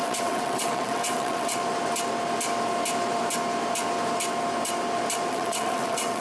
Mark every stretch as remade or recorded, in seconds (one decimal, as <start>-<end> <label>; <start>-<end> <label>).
0.0-1.6 remade; 1.6-5.3 recorded; 5.3-6.2 remade